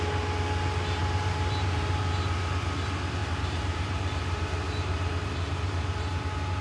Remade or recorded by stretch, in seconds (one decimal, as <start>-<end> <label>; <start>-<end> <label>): 0.0-1.0 recorded; 1.0-2.0 remade; 2.0-3.2 recorded; 3.2-6.6 remade